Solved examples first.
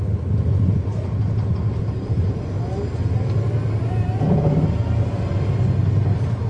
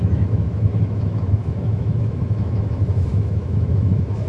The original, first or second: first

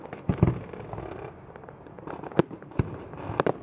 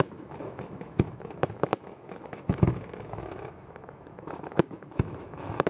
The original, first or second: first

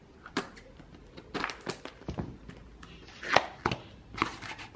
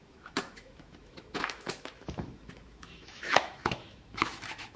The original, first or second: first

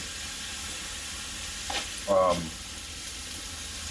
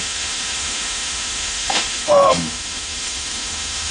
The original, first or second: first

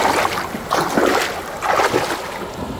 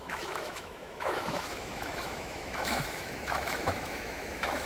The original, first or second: first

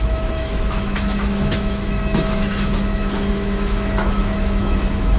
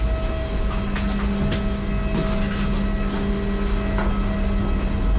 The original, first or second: second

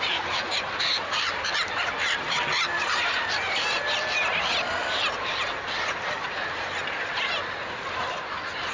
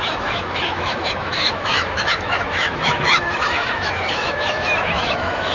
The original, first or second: first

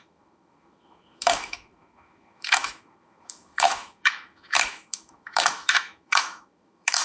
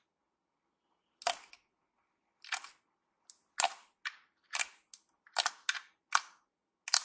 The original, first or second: second